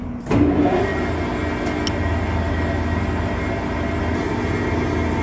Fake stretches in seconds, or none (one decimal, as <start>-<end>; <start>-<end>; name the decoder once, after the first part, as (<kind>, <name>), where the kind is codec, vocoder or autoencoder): none